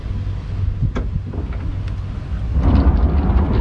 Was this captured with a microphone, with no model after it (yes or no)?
yes